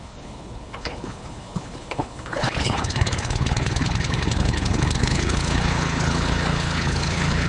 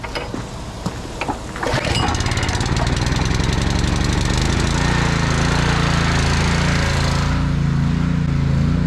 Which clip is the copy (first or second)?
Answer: first